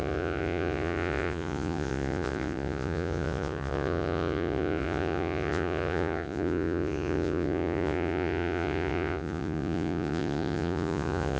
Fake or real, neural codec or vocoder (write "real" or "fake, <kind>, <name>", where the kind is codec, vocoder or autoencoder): fake, vocoder, Vocos